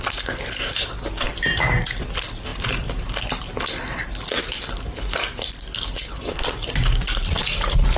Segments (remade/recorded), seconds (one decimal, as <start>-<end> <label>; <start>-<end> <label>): 0.0-8.0 recorded